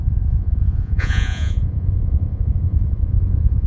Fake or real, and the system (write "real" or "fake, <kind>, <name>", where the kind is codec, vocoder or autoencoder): fake, vocoder, Vocos